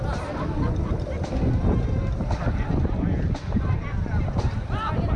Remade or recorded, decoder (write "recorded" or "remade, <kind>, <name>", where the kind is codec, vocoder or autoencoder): recorded